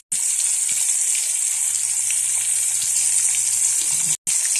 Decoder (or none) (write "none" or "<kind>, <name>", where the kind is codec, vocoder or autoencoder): none